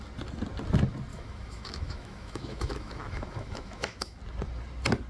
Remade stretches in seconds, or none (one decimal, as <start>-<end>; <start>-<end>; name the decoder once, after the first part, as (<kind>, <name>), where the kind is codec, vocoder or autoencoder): 1.1-4.2 (autoencoder, DAC-VAE)